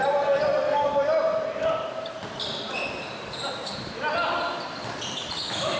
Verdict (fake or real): real